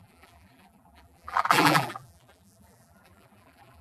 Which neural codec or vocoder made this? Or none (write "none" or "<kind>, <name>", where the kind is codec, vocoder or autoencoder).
vocoder, BigVGAN v2